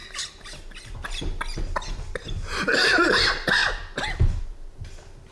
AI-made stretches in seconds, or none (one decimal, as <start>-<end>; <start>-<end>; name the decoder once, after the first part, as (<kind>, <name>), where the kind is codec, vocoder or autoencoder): none